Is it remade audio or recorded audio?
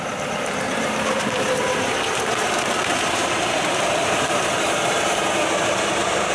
remade